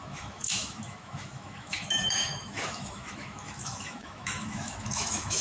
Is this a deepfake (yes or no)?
yes